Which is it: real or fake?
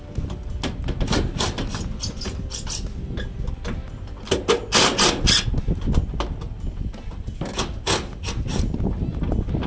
real